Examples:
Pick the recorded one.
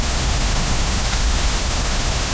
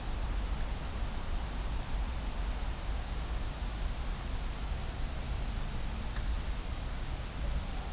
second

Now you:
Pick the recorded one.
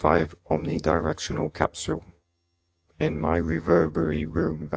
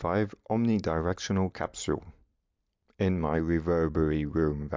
second